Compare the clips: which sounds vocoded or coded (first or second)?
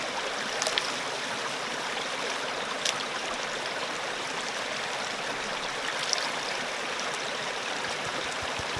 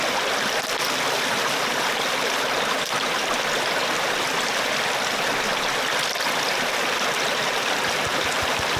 first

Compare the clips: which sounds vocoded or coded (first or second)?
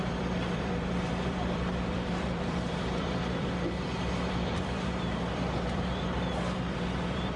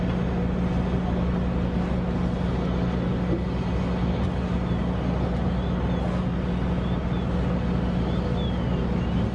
first